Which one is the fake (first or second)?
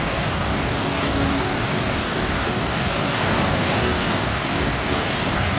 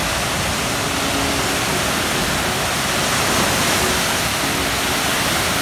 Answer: first